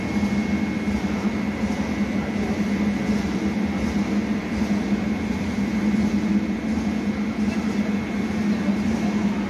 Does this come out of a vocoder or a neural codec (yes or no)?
no